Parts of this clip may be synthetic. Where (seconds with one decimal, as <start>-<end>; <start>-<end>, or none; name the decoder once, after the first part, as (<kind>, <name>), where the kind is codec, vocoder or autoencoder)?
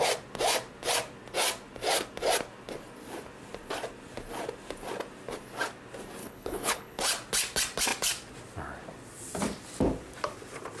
6.2-7.0 (codec, HILCodec)